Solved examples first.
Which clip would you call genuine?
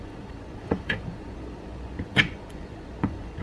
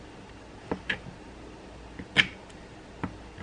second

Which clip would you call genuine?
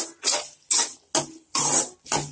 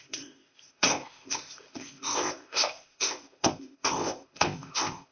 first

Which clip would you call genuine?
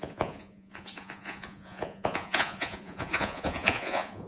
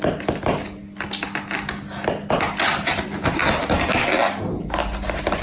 second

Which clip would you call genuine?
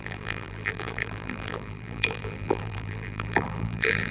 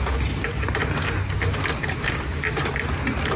second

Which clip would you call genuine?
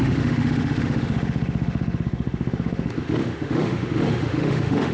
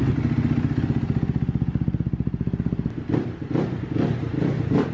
second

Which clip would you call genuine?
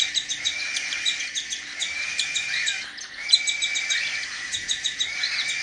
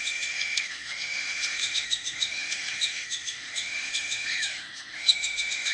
first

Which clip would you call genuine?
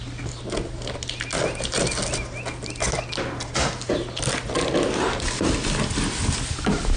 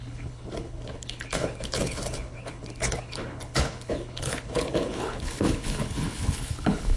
first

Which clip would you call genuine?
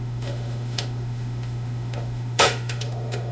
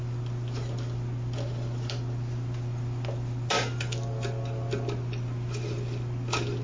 second